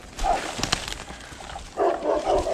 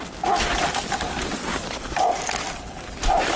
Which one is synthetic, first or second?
first